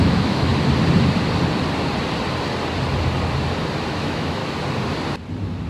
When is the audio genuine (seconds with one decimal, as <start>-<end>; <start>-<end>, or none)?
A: 0.5-3.9; 4.4-5.7